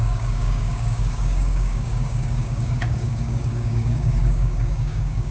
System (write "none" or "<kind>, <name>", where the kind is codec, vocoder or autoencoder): codec, DAC